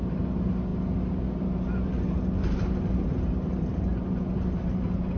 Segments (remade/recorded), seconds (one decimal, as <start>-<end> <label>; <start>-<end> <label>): 0.0-5.2 recorded

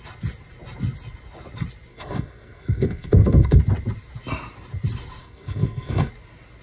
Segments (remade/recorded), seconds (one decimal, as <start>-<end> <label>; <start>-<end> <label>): 0.0-1.9 recorded; 1.9-3.6 remade; 3.6-5.2 recorded; 5.2-6.1 remade; 6.1-6.6 recorded

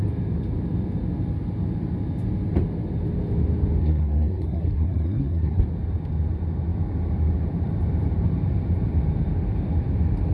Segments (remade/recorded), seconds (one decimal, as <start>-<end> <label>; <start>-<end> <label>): 0.0-3.8 recorded; 3.8-5.6 remade; 5.6-10.3 recorded

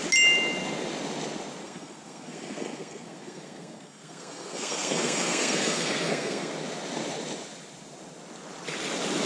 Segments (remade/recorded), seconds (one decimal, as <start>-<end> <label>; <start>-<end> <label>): 0.0-1.6 recorded; 1.6-6.5 remade; 6.5-9.3 recorded

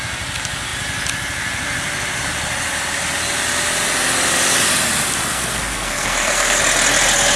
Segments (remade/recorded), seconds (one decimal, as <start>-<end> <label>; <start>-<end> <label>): 0.0-5.3 recorded; 5.3-6.6 remade; 6.6-7.4 recorded

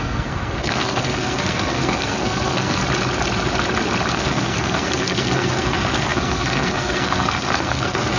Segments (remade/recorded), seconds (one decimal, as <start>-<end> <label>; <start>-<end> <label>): 0.0-2.8 remade; 2.8-4.1 recorded; 4.1-8.2 remade

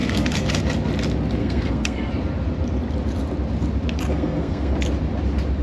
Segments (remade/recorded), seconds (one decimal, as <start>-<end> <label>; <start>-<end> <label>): 0.0-0.6 remade; 0.6-1.4 recorded; 1.4-2.1 remade; 2.1-4.1 recorded; 4.1-4.7 remade; 4.7-5.6 recorded